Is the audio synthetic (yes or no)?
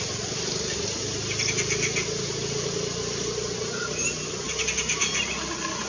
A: no